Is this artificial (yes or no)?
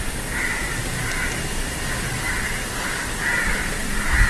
no